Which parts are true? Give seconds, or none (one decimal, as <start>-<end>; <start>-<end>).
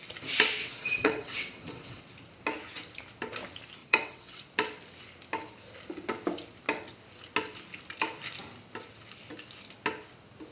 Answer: 0.0-0.6; 2.0-3.8; 4.4-10.5